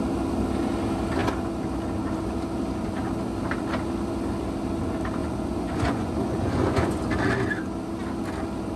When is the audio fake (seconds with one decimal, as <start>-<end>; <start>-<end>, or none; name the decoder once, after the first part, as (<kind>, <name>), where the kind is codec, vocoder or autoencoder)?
5.2-7.0 (vocoder, Vocos)